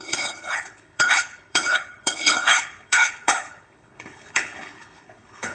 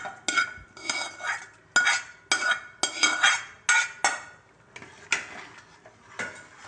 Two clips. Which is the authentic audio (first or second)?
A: second